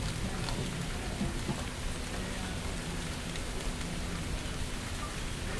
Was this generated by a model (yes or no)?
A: no